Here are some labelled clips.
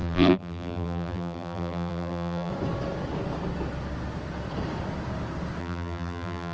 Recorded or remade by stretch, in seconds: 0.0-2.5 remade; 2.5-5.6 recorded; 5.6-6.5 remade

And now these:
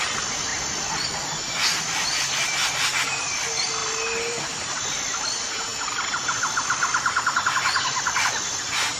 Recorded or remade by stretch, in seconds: 0.0-9.0 recorded

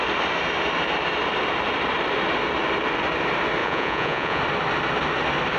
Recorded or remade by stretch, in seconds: 0.0-3.6 recorded; 3.6-4.4 remade; 4.4-5.6 recorded

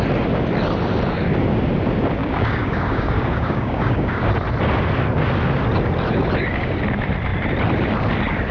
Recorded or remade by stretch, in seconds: 0.0-2.2 recorded; 2.2-4.3 remade; 4.3-8.5 recorded

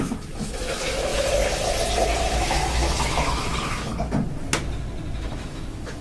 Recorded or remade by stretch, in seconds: 0.0-1.1 remade; 1.1-2.2 recorded; 2.2-3.9 remade; 3.9-5.2 recorded; 5.2-6.0 remade

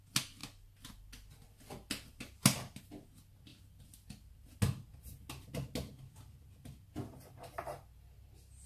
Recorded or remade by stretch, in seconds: 0.0-8.7 recorded